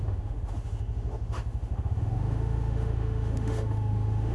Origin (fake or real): fake